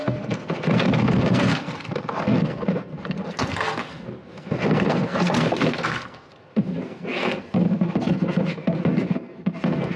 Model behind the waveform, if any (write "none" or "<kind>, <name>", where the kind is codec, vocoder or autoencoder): codec, SNAC